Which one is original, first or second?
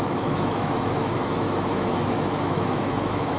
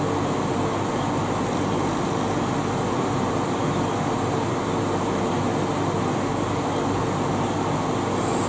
second